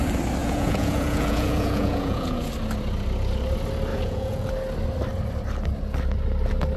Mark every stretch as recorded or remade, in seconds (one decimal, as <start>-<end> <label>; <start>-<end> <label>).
0.0-0.4 recorded; 0.4-2.5 remade; 2.5-3.9 recorded; 3.9-4.5 remade; 4.5-6.8 recorded